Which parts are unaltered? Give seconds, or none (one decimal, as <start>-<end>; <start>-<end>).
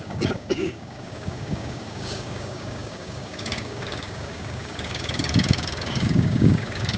none